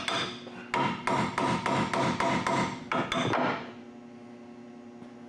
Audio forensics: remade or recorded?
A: recorded